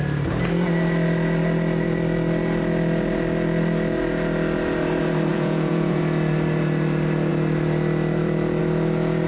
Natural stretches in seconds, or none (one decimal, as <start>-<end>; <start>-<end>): 0.0-5.3; 6.0-9.3

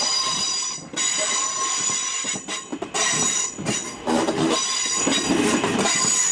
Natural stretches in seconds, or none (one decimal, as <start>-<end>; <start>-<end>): 0.0-6.3

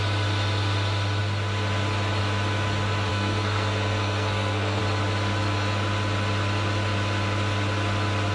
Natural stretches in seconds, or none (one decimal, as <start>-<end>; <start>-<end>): 0.0-3.1; 4.8-8.3